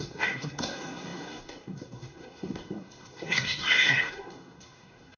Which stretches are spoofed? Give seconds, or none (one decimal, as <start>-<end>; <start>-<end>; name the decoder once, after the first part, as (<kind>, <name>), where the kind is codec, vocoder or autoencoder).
0.0-5.2 (codec, SNAC)